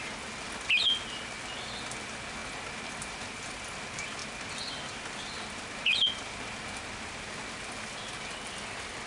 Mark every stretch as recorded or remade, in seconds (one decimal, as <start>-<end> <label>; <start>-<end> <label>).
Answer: 0.0-9.1 recorded